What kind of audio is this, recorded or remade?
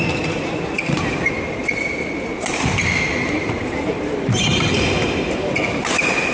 recorded